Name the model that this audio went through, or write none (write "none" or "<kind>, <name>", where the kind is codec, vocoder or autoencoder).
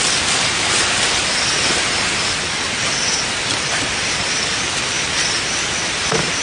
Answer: none